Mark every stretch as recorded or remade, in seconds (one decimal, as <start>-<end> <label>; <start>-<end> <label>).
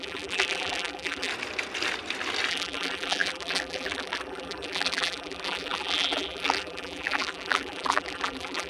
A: 0.0-1.3 remade; 1.3-2.5 recorded; 2.5-8.7 remade